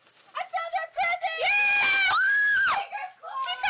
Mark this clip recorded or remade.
recorded